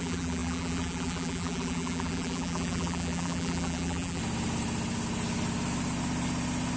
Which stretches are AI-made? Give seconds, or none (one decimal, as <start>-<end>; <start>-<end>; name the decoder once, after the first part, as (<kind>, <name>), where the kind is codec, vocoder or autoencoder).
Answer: 0.0-4.2 (vocoder, BigVGAN v2)